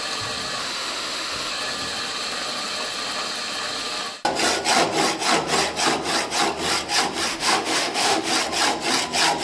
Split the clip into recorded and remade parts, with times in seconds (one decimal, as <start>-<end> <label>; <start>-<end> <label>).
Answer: 0.0-0.6 recorded; 0.6-1.5 remade; 1.5-7.3 recorded; 7.3-8.3 remade; 8.3-9.4 recorded